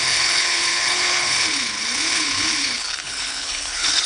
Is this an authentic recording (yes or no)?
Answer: no